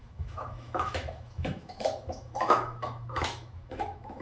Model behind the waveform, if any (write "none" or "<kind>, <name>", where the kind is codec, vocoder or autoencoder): autoencoder, DAC-VAE